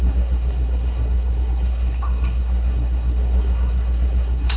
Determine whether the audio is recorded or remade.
remade